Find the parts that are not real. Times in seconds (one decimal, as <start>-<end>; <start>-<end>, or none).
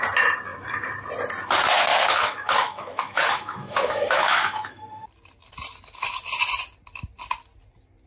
1.9-4.8